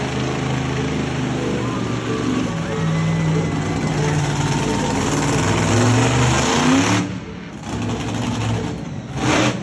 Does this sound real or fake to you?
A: real